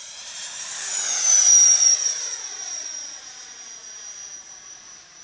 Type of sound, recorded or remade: remade